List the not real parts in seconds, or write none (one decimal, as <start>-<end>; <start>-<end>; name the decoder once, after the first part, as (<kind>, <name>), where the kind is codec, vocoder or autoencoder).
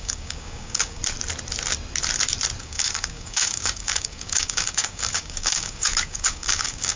0.0-1.0 (codec, DAC); 2.6-7.0